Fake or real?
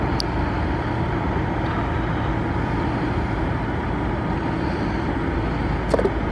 real